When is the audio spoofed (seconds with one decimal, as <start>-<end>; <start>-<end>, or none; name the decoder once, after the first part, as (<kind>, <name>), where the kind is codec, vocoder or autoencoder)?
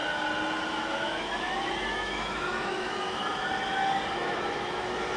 0.7-3.3 (autoencoder, DAC-VAE); 4.1-5.2